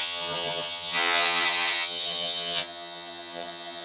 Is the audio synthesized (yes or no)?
yes